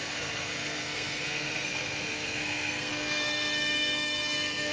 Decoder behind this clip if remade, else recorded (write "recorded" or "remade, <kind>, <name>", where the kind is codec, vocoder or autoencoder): remade, codec, SNAC